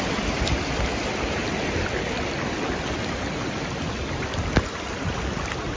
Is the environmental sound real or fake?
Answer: real